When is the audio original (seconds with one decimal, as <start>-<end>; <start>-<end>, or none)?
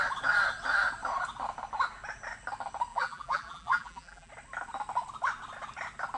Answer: 0.0-2.9; 4.3-6.2